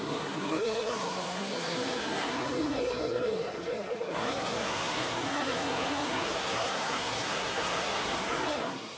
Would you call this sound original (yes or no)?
no